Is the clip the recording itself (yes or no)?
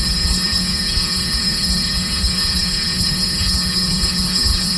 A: no